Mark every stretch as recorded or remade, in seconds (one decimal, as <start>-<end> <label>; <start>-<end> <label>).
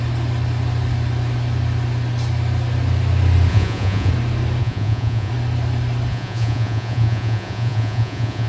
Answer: 0.0-3.5 recorded; 3.5-4.1 remade; 4.1-4.6 recorded; 4.6-5.3 remade; 5.3-6.1 recorded; 6.1-8.5 remade